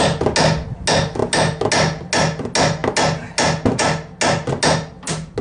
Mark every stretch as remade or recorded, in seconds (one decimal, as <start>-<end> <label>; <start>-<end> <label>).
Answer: 0.0-5.4 recorded